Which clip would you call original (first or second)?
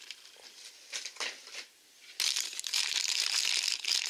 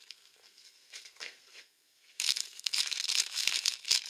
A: first